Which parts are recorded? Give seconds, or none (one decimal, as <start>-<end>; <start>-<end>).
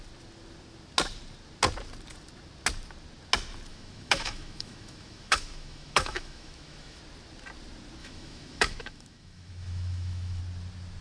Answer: 0.0-3.7; 7.0-8.0; 10.4-11.0